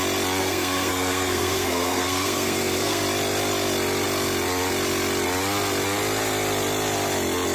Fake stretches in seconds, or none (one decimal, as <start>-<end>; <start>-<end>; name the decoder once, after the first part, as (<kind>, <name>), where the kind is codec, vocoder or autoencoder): 0.4-3.0 (codec, SNAC)